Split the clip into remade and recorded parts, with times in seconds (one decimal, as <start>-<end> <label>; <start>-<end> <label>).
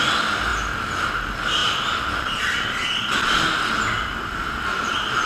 0.0-0.5 recorded; 0.5-1.1 remade; 1.1-1.6 recorded; 1.6-2.4 remade; 2.4-5.3 recorded